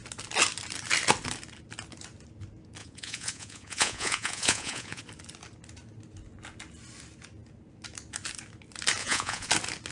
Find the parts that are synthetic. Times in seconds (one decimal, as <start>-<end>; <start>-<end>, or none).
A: 2.8-5.0; 9.0-9.5